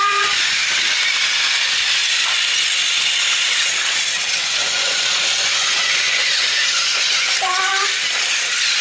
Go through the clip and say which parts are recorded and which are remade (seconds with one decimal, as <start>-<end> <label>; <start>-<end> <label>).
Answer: 0.0-0.6 remade; 0.6-4.3 recorded; 4.3-7.7 remade; 7.7-8.8 recorded